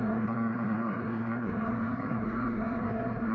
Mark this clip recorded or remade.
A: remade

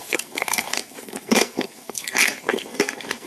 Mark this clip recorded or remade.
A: remade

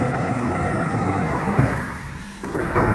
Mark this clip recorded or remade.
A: remade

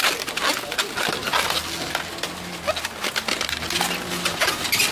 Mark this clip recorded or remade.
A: recorded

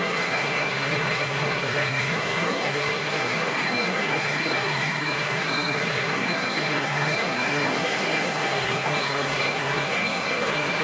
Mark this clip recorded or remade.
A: remade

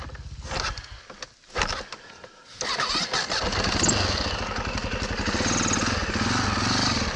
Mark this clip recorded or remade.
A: recorded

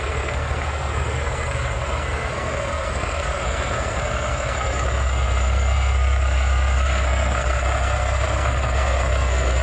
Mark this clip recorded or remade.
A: remade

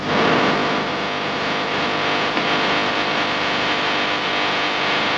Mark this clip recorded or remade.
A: recorded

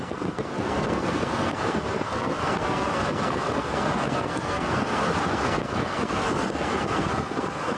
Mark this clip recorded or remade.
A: remade